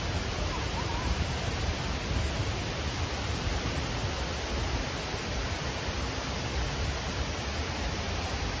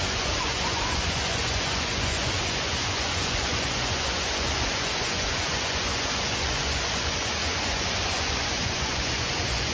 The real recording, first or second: first